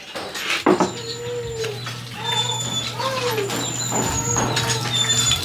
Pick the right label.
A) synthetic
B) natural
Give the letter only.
B